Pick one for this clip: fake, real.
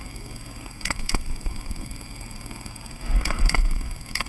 fake